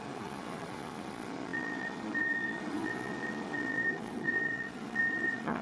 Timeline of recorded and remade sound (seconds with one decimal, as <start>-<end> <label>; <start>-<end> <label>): 0.0-5.6 remade